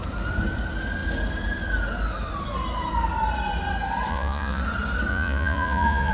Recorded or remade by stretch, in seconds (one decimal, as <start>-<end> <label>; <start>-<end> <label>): 0.0-4.1 recorded; 4.1-4.6 remade; 4.6-5.1 recorded; 5.1-6.1 remade